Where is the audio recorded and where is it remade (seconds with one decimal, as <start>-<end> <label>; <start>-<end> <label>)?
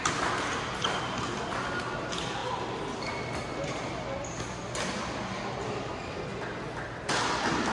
0.0-7.7 recorded